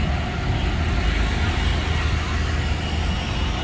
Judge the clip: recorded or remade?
recorded